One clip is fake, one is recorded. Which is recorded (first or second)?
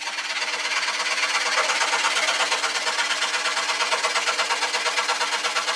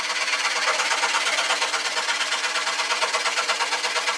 first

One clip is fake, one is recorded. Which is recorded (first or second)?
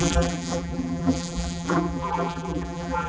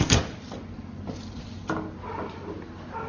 second